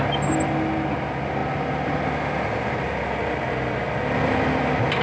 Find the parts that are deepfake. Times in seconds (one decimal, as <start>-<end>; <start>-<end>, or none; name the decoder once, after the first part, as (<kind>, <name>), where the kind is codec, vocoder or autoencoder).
none